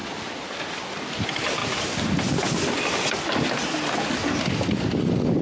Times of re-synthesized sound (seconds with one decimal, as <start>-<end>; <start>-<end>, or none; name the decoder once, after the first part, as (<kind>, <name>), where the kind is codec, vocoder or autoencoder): none